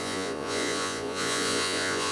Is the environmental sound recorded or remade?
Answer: remade